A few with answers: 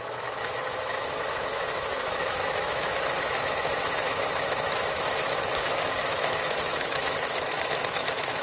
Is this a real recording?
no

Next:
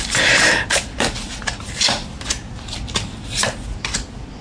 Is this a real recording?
yes